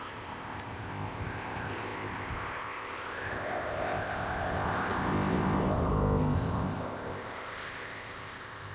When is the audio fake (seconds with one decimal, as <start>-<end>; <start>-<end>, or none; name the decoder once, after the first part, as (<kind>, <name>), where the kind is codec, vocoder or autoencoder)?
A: 0.0-8.7 (codec, ZipCodec)